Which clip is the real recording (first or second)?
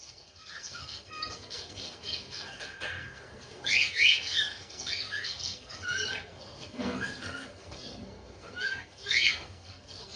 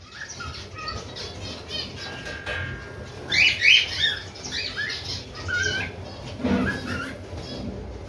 second